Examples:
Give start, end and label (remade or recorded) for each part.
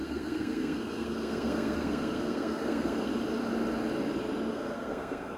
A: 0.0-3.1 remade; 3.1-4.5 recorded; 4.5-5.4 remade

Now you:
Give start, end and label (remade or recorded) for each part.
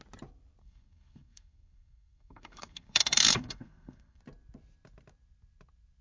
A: 0.0-0.6 recorded; 0.6-4.2 remade; 4.2-6.0 recorded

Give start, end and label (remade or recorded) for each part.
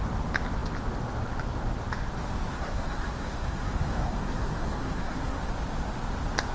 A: 0.0-2.5 recorded; 2.5-5.4 remade; 5.4-6.5 recorded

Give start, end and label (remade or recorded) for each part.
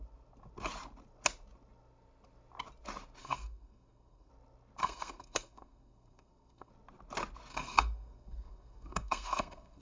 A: 0.0-3.2 recorded; 3.2-4.3 remade; 4.3-4.8 recorded; 4.8-6.7 remade; 6.7-7.5 recorded; 7.5-9.8 remade